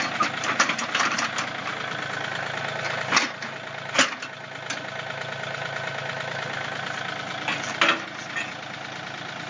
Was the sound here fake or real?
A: real